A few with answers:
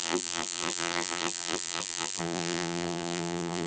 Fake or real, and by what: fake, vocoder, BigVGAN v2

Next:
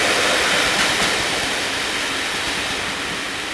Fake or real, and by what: real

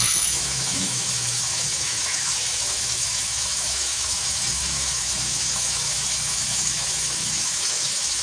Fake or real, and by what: fake, autoencoder, DAC-VAE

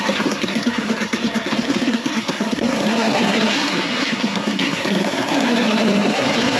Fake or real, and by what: fake, codec, SNAC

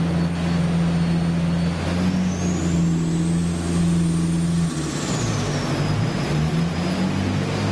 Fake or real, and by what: real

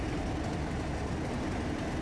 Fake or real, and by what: real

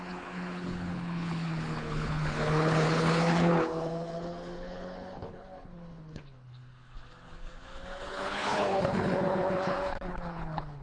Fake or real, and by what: fake, codec, HILCodec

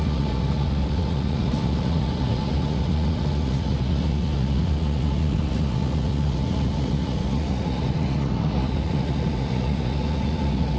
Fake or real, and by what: fake, vocoder, Vocos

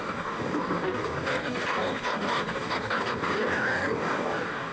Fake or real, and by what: fake, codec, DAC